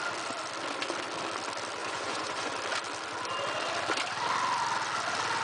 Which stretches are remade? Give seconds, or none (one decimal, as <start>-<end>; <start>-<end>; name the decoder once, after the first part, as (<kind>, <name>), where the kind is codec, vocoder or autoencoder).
1.8-2.5 (vocoder, Vocos)